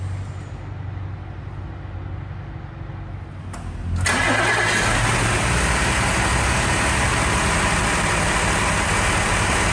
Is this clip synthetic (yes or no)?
no